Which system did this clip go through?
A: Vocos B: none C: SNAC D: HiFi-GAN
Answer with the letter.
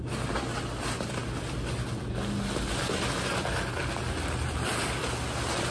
B